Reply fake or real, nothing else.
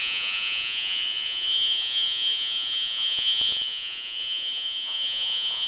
fake